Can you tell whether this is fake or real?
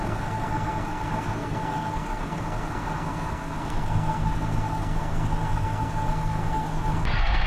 fake